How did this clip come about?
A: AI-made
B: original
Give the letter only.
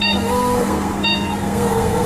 A